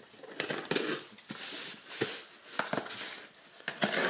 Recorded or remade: recorded